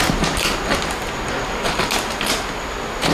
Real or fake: real